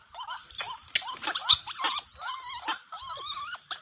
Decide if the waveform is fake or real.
real